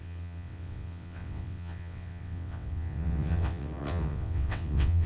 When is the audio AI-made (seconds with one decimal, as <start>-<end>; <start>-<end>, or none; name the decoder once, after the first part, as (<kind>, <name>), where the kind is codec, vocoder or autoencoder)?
0.0-5.1 (vocoder, WaveNeXt)